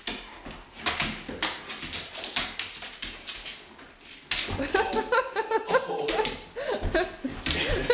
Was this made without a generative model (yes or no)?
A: yes